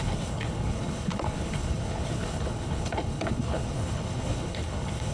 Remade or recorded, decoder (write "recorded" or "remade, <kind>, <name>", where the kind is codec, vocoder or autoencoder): remade, codec, HILCodec